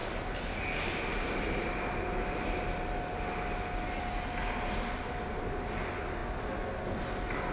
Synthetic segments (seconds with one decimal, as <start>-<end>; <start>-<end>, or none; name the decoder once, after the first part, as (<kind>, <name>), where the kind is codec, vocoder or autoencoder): none